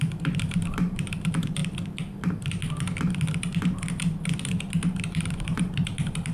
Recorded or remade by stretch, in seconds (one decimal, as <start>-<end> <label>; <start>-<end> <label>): 0.0-1.6 remade; 1.6-5.0 recorded; 5.0-6.3 remade